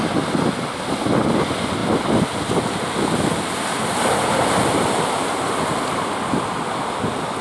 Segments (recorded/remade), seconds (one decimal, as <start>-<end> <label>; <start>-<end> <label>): 0.0-7.4 recorded

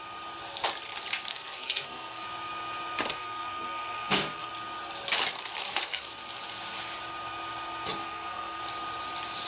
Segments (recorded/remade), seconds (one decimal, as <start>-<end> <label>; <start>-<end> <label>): 0.0-1.3 recorded; 1.3-2.2 remade; 2.2-3.1 recorded; 3.1-4.5 remade; 4.5-5.6 recorded; 5.6-6.1 remade; 6.1-8.0 recorded; 8.0-8.6 remade; 8.6-9.5 recorded

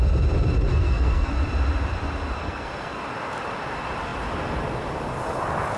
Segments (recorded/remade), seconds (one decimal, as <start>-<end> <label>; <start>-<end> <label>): 0.0-0.7 recorded; 0.7-1.3 remade; 1.3-2.4 recorded; 2.4-3.0 remade; 3.0-5.8 recorded

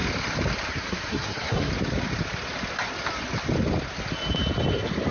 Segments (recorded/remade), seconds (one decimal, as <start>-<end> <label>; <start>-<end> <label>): 0.0-0.7 recorded; 0.7-1.7 remade; 1.7-5.1 recorded

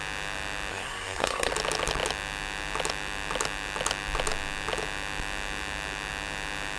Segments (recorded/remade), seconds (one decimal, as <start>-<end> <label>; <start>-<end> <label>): 0.0-0.7 recorded; 0.7-1.5 remade; 1.5-6.8 recorded

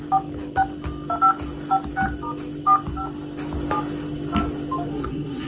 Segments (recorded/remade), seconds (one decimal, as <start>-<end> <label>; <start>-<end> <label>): 0.0-4.9 recorded; 4.9-5.5 remade

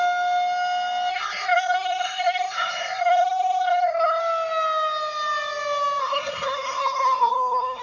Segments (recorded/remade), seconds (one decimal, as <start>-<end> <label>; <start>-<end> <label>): 0.0-1.1 recorded; 1.1-4.2 remade; 4.2-6.0 recorded; 6.0-7.8 remade